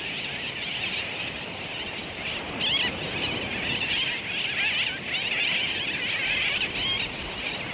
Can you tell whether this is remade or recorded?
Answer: recorded